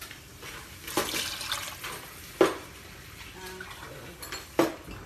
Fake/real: real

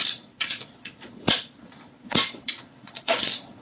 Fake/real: fake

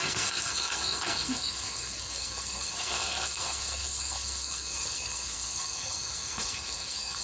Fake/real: fake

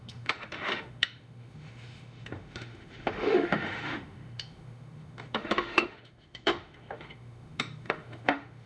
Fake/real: fake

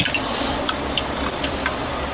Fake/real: fake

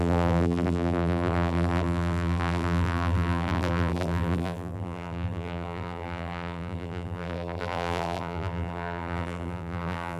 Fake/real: fake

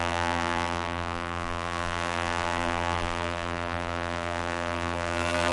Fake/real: fake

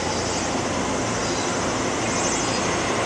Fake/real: real